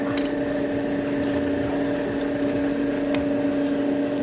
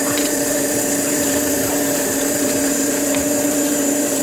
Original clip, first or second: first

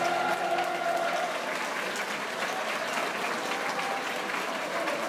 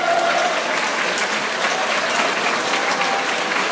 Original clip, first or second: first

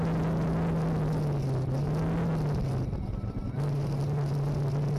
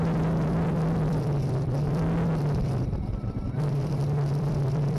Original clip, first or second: first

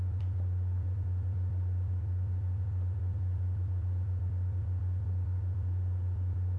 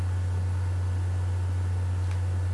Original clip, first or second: second